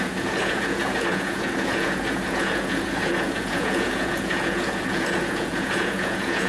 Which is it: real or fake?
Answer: fake